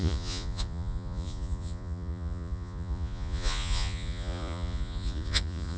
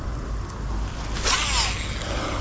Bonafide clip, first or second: second